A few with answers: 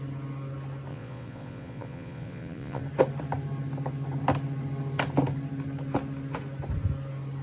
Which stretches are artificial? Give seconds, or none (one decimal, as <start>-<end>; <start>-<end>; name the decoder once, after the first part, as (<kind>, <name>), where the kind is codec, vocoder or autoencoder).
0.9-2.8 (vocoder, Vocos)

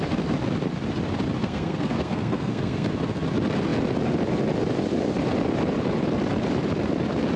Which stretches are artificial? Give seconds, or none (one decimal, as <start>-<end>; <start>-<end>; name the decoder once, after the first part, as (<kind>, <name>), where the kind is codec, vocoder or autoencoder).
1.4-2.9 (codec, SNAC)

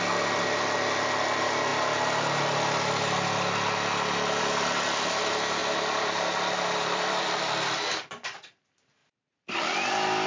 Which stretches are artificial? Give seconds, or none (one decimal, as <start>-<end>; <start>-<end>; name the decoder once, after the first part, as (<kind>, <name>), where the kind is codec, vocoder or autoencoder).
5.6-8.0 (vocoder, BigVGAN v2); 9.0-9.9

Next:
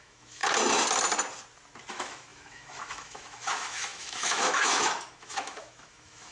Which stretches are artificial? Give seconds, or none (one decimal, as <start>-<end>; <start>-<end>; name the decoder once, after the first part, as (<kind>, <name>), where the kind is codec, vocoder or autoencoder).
0.0-0.4 (autoencoder, DAC-VAE); 1.9-6.3

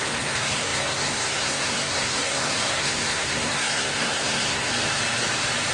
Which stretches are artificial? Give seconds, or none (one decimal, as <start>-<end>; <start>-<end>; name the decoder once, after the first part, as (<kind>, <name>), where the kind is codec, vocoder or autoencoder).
0.0-4.7 (codec, SNAC)

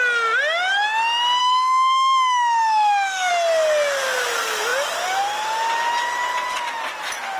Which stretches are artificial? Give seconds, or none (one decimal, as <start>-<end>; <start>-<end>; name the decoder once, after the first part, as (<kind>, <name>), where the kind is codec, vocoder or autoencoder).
1.4-3.3 (autoencoder, DAC-VAE)

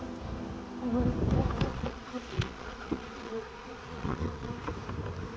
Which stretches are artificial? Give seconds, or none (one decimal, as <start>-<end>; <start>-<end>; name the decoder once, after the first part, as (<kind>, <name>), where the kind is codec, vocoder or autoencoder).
1.7-4.5 (vocoder, Vocos)